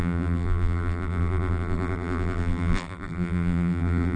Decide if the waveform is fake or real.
fake